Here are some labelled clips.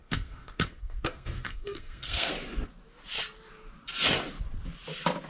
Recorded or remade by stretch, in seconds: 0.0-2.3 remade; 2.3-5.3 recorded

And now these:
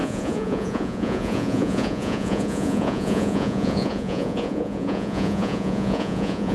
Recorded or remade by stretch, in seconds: 0.0-6.5 remade

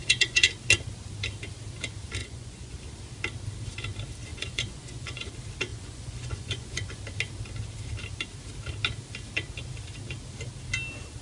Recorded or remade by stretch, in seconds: 0.0-0.5 remade; 0.5-2.2 recorded; 2.2-2.8 remade; 2.8-4.3 recorded; 4.3-5.3 remade; 5.3-5.7 recorded; 5.7-7.0 remade; 7.0-11.2 recorded